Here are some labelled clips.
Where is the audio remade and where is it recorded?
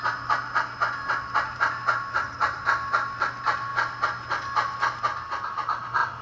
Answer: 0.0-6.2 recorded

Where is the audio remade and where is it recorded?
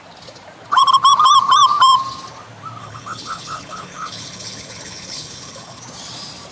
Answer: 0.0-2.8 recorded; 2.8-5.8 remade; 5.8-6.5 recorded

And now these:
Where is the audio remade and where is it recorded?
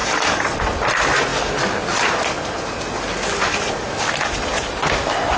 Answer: 0.0-0.6 remade; 0.6-5.4 recorded